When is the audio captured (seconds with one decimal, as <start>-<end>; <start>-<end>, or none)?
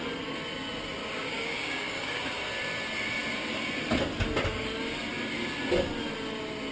0.0-1.0; 2.2-6.7